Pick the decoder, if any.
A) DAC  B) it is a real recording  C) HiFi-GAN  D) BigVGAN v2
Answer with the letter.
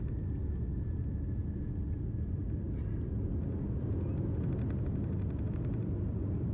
B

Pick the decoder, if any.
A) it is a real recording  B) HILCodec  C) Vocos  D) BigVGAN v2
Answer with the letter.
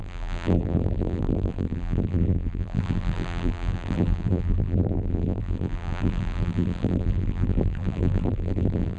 D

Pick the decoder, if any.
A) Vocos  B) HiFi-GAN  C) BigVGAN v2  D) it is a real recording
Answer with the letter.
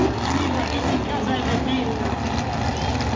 D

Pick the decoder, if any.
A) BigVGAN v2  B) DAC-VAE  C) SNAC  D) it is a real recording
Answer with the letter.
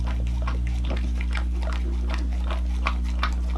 D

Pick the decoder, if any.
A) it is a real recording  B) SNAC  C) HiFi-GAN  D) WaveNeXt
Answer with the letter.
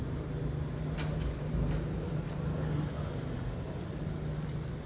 A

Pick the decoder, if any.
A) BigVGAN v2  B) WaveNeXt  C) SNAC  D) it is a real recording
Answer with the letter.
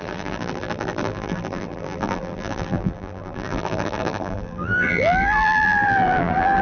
A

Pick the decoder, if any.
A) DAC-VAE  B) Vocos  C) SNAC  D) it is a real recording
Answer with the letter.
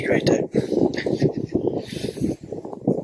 D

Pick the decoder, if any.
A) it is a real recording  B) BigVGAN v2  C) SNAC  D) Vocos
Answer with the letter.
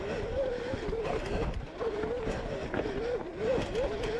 A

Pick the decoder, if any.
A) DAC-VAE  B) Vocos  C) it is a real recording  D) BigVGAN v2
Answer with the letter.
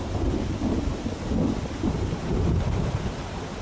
C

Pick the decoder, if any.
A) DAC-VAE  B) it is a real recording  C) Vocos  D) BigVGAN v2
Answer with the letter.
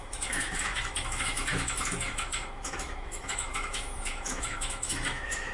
A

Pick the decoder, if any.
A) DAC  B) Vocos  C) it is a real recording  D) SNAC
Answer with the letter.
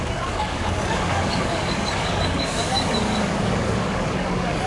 A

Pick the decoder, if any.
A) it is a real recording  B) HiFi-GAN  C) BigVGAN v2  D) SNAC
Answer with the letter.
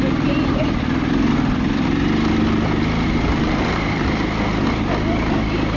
A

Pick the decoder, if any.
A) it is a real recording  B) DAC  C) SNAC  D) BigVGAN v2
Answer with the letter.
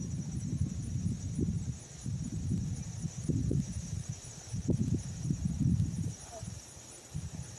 D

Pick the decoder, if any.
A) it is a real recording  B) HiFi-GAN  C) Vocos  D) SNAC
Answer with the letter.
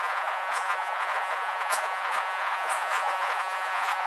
C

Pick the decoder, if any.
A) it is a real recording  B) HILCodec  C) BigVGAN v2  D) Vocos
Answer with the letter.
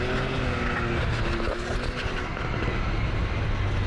A